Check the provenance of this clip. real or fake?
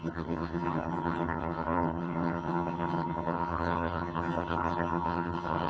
fake